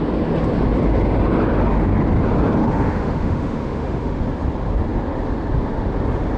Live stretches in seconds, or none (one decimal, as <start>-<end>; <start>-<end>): 0.0-2.6; 4.2-6.4